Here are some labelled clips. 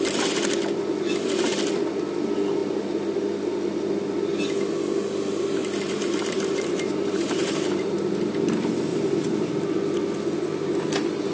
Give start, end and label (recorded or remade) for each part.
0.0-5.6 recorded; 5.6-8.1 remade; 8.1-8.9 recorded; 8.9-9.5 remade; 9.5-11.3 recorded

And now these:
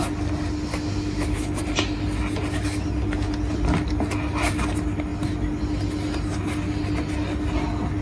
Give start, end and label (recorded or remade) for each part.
0.0-0.7 recorded; 0.7-1.6 remade; 1.6-8.0 recorded

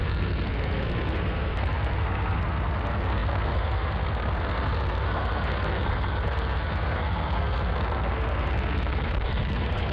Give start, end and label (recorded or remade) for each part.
0.0-9.9 remade

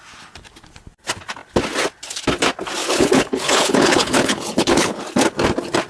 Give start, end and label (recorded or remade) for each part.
0.0-2.8 recorded; 2.8-5.0 remade; 5.0-5.9 recorded

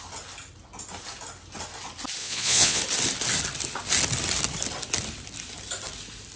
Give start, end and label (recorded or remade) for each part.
0.0-2.2 recorded; 2.2-2.8 remade; 2.8-6.4 recorded

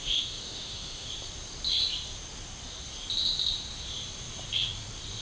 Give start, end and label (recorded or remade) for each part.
0.0-1.1 remade; 1.1-5.2 recorded

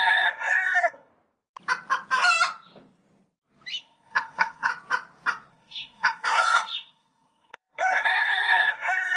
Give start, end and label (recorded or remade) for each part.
0.0-1.1 remade; 1.1-3.8 recorded; 3.8-4.7 remade; 4.7-5.5 recorded; 5.5-9.2 remade

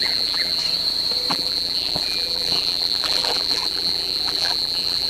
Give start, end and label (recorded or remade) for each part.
0.0-0.6 remade; 0.6-1.3 recorded; 1.3-5.1 remade